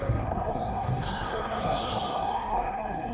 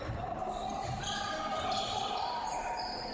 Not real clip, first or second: first